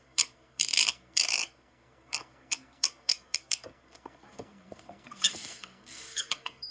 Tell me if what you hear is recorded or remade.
remade